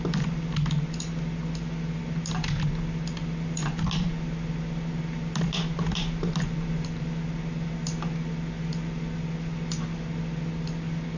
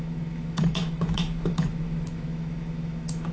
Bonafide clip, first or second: first